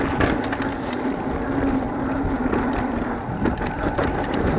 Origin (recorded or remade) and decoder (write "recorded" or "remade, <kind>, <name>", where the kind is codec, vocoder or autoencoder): recorded